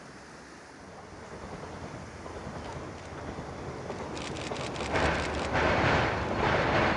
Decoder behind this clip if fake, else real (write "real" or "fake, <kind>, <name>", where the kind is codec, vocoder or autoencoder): real